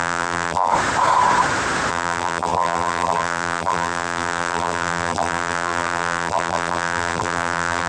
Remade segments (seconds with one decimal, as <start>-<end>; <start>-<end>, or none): 0.0-0.7; 1.9-7.9